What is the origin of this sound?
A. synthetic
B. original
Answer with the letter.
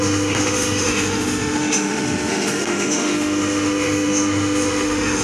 A